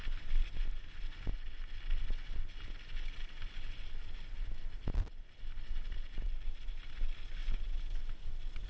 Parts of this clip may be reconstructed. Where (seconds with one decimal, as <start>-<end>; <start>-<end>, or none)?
7.4-8.0

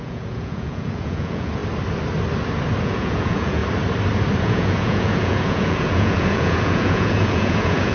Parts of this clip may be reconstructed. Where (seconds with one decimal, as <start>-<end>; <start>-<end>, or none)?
0.0-1.6; 2.8-3.6; 4.4-7.9

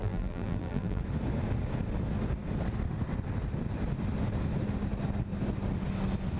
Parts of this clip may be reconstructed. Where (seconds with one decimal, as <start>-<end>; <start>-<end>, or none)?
0.0-1.0